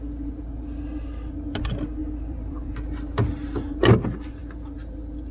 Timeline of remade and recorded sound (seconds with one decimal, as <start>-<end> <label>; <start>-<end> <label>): 0.0-2.0 recorded; 2.0-2.7 remade; 2.7-5.3 recorded